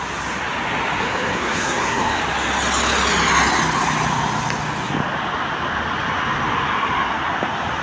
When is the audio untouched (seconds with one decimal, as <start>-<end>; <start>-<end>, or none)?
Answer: 0.0-1.0; 2.2-7.8